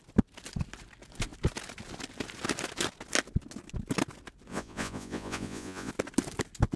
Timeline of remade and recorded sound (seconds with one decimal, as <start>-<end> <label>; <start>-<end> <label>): 0.0-4.5 recorded; 4.5-5.9 remade; 5.9-6.8 recorded